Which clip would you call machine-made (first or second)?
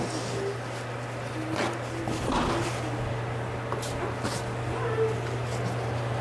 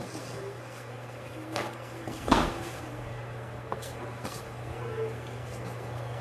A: second